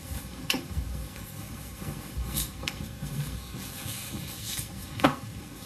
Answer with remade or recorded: remade